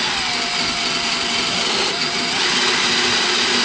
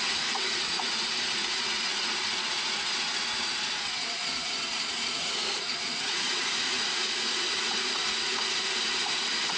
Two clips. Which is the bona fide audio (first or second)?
first